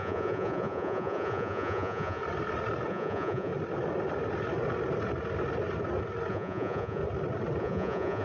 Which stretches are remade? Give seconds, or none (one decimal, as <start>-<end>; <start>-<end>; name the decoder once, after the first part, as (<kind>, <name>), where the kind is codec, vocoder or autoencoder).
0.0-2.2 (vocoder, Vocos); 2.9-3.5; 6.3-7.0; 7.6-8.2